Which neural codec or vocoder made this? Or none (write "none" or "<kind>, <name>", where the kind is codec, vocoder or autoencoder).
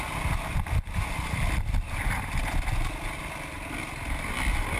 none